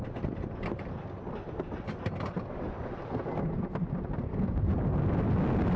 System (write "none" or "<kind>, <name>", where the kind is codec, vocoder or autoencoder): none